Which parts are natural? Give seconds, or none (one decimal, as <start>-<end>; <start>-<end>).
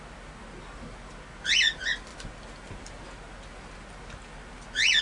0.0-5.0